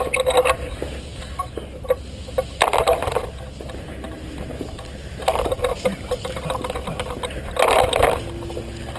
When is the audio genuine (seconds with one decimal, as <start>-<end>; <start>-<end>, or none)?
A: 0.0-9.0